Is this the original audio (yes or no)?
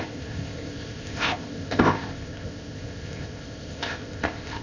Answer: no